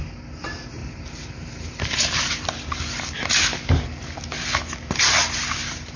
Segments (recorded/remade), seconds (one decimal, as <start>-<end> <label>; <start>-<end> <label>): 0.0-0.8 recorded; 0.8-3.4 remade; 3.4-5.2 recorded; 5.2-6.0 remade